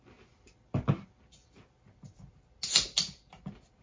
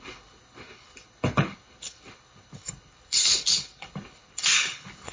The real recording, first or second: first